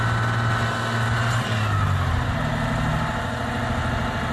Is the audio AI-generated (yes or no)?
no